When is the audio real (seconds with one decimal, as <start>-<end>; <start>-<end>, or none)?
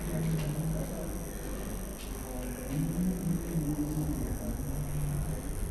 0.0-5.7